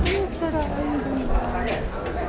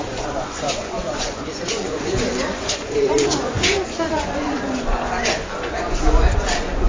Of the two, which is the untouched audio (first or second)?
first